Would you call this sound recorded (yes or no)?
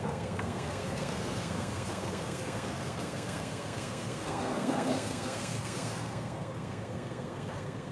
no